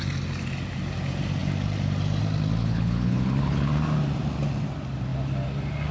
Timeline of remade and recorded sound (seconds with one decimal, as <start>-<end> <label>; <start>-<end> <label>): 0.0-2.6 recorded; 2.6-3.7 remade; 3.7-5.9 recorded